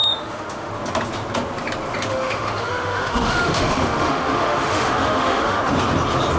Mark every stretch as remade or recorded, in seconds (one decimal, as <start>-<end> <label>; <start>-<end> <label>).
0.0-0.7 remade; 0.7-2.1 recorded; 2.1-5.6 remade; 5.6-6.4 recorded